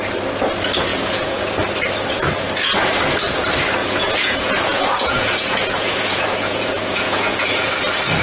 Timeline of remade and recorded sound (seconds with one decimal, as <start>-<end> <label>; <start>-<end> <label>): 0.0-0.9 recorded; 0.9-1.5 remade; 1.5-3.8 recorded; 3.8-7.7 remade; 7.7-8.2 recorded